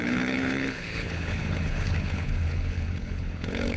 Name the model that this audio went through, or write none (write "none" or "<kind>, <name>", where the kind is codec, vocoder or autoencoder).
codec, HILCodec